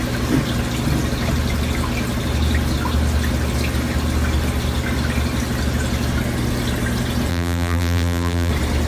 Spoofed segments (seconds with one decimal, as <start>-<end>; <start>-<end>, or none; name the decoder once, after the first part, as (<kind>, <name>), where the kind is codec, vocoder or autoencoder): 7.3-8.5 (vocoder, BigVGAN v2)